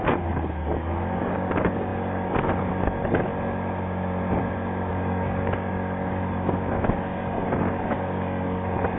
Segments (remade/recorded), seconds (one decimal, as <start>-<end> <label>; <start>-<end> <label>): 0.0-3.3 remade; 3.3-4.9 recorded; 4.9-9.0 remade